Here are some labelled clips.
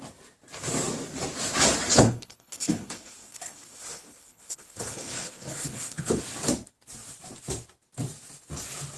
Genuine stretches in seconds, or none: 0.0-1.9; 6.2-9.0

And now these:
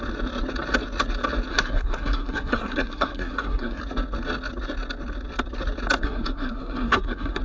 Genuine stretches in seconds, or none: 0.0-1.5; 3.8-6.0

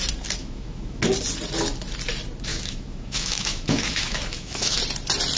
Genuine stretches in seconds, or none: 0.0-0.4; 1.0-2.5; 4.8-5.4

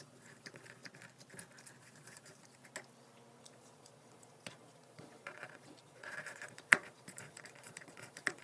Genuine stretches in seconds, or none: 0.8-1.8; 2.6-3.4

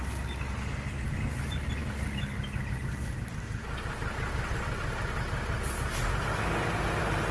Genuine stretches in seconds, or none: 0.0-7.3

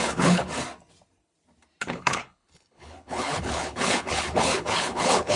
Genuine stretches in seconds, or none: 0.4-1.8

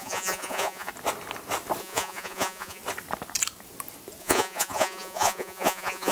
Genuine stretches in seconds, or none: 0.9-1.8; 2.8-4.2

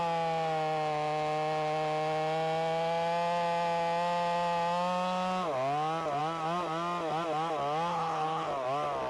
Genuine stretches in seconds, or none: 0.0-7.9; 8.5-9.1